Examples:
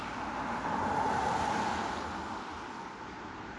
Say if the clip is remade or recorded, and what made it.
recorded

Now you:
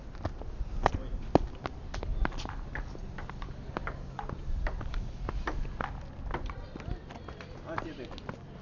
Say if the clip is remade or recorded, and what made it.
recorded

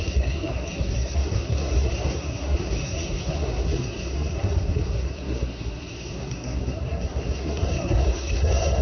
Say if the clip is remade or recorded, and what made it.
remade, codec, SNAC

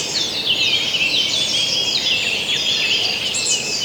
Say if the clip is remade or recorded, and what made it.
recorded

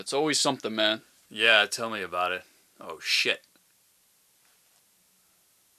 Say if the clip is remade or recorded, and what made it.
recorded